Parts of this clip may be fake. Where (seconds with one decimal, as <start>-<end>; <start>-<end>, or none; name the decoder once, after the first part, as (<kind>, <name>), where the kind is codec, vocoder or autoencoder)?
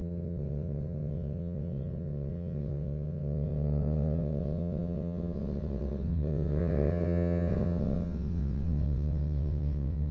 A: 0.0-10.1 (vocoder, WaveNeXt)